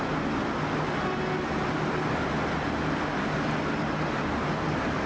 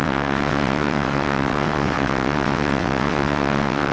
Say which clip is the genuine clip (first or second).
first